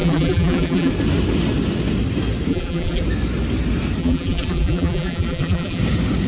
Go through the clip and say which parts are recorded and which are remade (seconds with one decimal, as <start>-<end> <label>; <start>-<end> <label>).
0.0-0.9 remade; 0.9-2.5 recorded; 2.5-3.0 remade; 3.0-4.0 recorded; 4.0-5.8 remade; 5.8-6.3 recorded